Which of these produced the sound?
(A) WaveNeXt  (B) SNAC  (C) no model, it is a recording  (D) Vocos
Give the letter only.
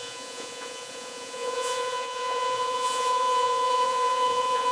D